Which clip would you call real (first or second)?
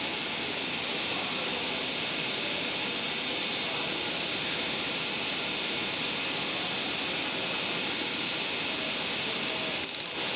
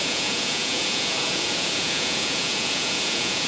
first